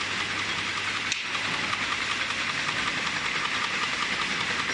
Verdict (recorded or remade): recorded